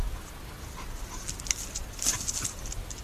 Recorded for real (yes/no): yes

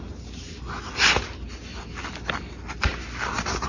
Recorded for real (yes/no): yes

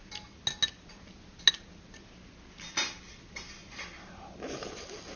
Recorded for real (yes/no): yes